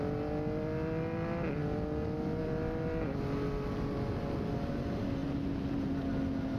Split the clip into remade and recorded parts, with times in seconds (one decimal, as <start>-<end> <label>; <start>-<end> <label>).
0.0-6.6 recorded